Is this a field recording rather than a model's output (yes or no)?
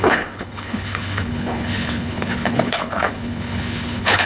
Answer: no